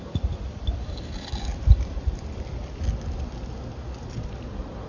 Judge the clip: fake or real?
real